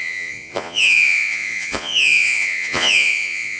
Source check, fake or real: fake